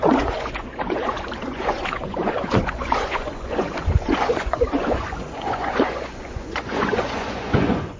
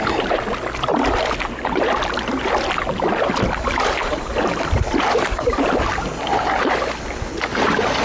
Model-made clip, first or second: first